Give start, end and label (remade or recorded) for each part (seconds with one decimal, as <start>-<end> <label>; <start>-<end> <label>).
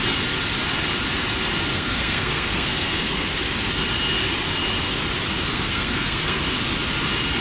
0.0-1.7 recorded; 1.7-3.4 remade; 3.4-5.5 recorded; 5.5-6.4 remade; 6.4-7.4 recorded